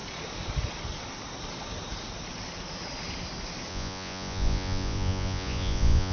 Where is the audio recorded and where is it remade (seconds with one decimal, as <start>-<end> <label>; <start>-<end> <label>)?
0.0-3.7 recorded; 3.7-6.1 remade

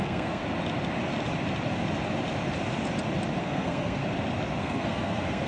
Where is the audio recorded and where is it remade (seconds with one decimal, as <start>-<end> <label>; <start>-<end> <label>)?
0.0-0.4 remade; 0.4-3.4 recorded; 3.4-4.0 remade; 4.0-4.6 recorded; 4.6-5.5 remade